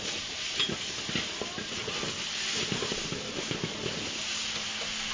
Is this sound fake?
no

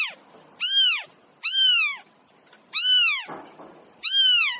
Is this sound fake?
no